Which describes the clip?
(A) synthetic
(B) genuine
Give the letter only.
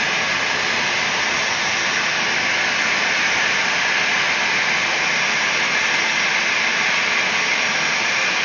B